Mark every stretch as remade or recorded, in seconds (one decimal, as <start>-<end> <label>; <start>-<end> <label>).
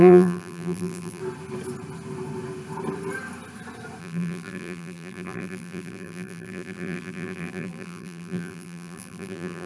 0.0-1.2 remade; 1.2-4.0 recorded; 4.0-9.7 remade